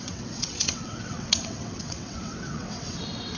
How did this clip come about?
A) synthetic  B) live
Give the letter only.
A